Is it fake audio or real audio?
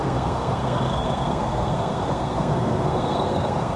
fake